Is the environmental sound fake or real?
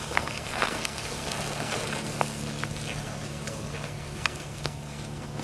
fake